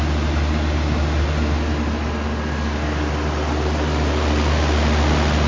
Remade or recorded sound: recorded